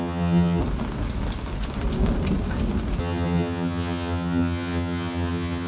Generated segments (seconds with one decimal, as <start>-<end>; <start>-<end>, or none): 0.0-0.6; 3.0-5.7